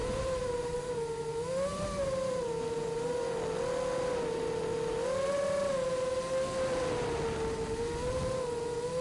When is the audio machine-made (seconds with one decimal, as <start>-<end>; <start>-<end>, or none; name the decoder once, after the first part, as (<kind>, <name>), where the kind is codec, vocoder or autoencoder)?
0.0-0.7 (vocoder, BigVGAN v2); 1.7-2.5